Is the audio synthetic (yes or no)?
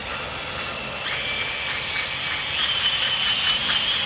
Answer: no